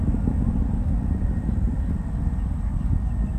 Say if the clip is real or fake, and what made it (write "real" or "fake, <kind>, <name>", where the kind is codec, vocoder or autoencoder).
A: real